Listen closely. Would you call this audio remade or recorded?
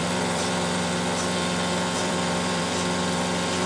remade